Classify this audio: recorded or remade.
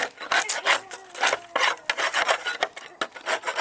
recorded